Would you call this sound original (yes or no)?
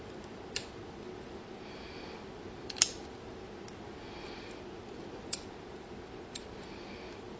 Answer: yes